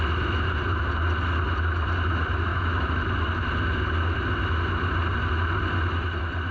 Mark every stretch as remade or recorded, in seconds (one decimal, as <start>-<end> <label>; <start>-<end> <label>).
0.0-2.5 recorded; 2.5-3.0 remade; 3.0-6.5 recorded